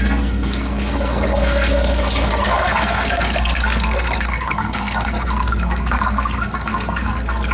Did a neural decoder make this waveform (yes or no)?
yes